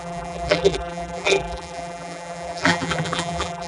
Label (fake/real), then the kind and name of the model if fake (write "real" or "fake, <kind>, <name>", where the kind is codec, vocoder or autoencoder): fake, vocoder, BigVGAN v2